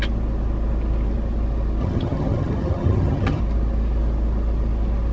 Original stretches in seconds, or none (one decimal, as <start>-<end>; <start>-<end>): 0.0-1.8; 3.4-5.1